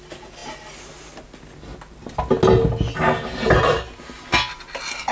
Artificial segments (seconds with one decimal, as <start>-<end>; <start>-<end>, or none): none